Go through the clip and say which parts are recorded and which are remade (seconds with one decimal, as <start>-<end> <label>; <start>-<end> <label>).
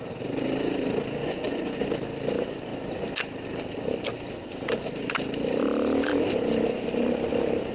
0.0-1.2 recorded; 1.2-1.8 remade; 1.8-7.7 recorded